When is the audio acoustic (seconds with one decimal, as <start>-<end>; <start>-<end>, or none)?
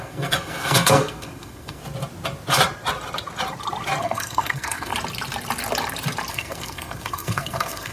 1.8-4.0; 4.9-6.3